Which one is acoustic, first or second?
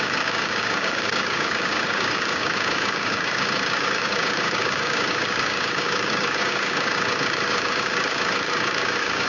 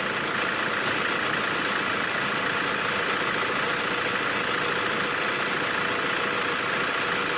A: second